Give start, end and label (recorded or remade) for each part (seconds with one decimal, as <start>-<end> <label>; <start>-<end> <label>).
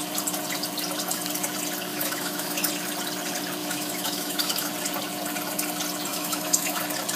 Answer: 0.0-1.9 recorded; 1.9-2.7 remade; 2.7-3.6 recorded; 3.6-4.7 remade; 4.7-6.1 recorded; 6.1-6.8 remade; 6.8-7.2 recorded